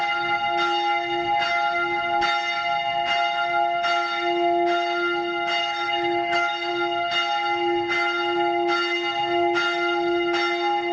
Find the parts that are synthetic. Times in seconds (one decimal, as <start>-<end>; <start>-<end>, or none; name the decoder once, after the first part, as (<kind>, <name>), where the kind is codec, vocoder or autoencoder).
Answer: 5.6-6.7 (autoencoder, DAC-VAE)

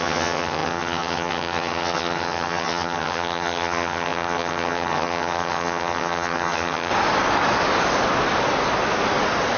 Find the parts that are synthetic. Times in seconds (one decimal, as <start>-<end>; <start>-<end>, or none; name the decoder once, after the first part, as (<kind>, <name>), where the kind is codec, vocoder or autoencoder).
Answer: 0.0-6.9 (vocoder, HiFi-GAN)

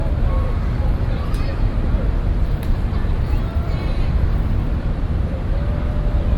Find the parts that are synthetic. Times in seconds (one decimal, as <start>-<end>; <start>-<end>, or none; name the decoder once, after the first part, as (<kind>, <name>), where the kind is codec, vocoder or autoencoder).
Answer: 0.0-1.5 (vocoder, BigVGAN v2); 2.4-6.4

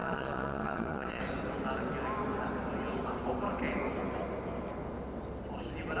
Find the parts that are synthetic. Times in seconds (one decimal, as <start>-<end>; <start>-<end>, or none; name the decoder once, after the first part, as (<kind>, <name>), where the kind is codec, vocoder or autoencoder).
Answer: 0.0-1.2 (vocoder, Vocos)

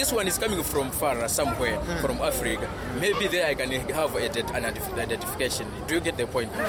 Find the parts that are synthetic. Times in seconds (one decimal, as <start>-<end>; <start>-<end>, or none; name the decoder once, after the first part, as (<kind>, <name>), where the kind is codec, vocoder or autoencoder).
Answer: 0.0-6.7 (vocoder, BigVGAN v2)